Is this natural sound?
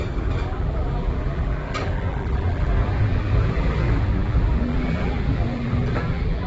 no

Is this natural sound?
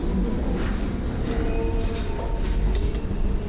no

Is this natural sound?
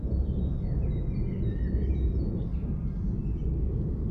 yes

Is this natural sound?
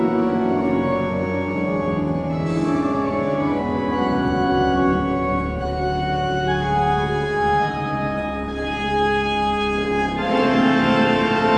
no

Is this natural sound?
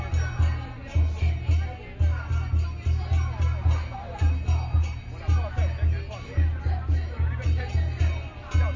yes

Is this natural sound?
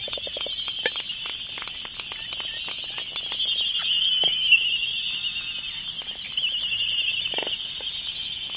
yes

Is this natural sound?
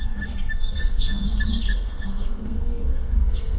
no